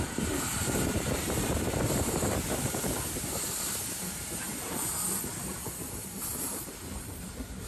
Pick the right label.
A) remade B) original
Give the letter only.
A